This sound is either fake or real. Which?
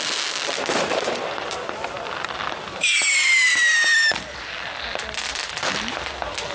real